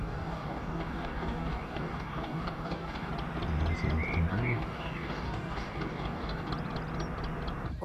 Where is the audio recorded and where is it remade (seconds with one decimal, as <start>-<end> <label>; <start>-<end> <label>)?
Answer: 0.0-3.1 remade; 3.1-4.3 recorded; 4.3-6.5 remade; 6.5-7.8 recorded

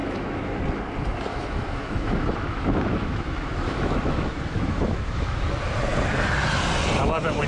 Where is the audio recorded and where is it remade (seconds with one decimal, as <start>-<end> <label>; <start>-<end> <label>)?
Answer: 0.0-0.6 remade; 0.6-1.3 recorded; 1.3-5.4 remade; 5.4-7.5 recorded

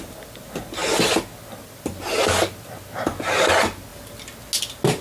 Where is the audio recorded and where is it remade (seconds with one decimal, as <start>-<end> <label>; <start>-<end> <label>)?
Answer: 0.0-5.0 recorded

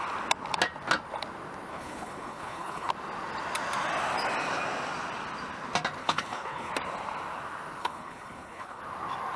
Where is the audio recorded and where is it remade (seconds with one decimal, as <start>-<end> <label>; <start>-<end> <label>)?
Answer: 0.0-1.7 recorded; 1.7-2.9 remade; 2.9-6.0 recorded; 6.0-6.7 remade; 6.7-7.8 recorded; 7.8-8.8 remade; 8.8-9.4 recorded

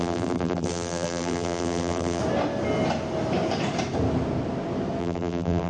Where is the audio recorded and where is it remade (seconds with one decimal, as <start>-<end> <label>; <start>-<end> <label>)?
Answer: 0.0-2.2 remade; 2.2-5.0 recorded; 5.0-5.7 remade

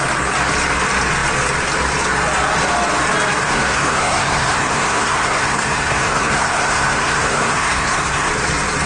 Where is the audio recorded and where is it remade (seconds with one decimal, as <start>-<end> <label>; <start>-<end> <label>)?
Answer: 0.0-3.4 recorded; 3.4-8.3 remade; 8.3-8.9 recorded

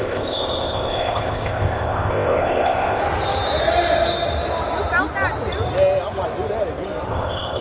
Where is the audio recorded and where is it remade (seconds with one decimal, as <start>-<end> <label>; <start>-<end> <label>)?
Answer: 0.0-3.0 remade; 3.0-7.1 recorded; 7.1-7.6 remade

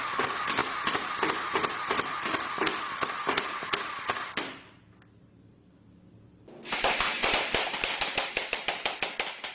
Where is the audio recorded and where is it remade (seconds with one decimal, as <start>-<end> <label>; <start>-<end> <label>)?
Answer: 0.0-9.5 recorded